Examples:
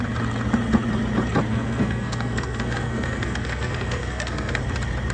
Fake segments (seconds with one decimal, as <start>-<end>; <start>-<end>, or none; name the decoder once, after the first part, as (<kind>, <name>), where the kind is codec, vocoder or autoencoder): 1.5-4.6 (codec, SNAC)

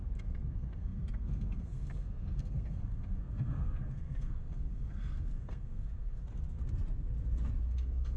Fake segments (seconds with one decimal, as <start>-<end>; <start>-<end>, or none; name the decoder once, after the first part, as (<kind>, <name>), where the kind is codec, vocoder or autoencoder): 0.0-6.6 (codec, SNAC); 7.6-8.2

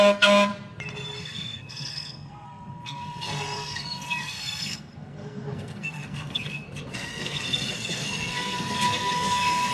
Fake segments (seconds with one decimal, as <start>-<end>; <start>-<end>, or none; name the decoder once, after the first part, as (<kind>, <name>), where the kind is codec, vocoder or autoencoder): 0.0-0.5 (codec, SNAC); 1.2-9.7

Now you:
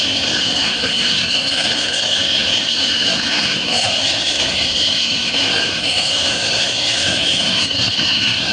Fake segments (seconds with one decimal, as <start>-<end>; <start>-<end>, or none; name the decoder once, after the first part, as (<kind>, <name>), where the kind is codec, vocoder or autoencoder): 0.0-8.5 (codec, SNAC)